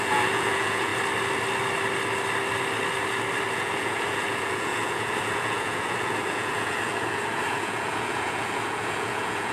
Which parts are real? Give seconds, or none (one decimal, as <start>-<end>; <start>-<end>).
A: 0.9-3.5